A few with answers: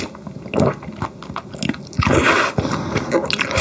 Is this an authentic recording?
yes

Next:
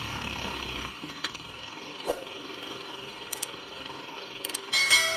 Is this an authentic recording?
no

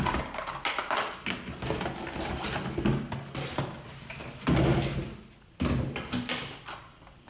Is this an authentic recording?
yes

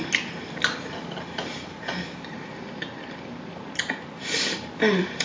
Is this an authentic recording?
yes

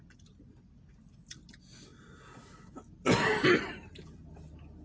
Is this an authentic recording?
yes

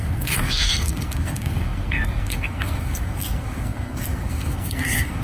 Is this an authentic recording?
no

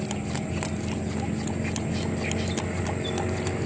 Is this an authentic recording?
yes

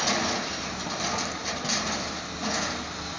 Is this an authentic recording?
yes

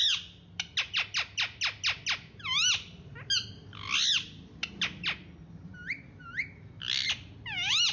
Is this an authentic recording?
yes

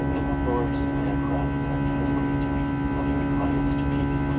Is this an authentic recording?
yes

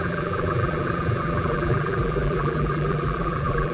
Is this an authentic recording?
no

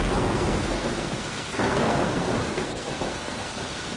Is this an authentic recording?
no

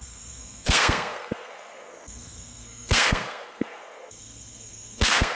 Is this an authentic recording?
no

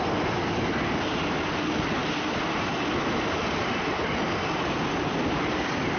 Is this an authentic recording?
yes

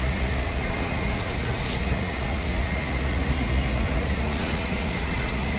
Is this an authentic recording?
no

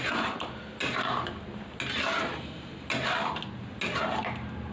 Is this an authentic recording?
yes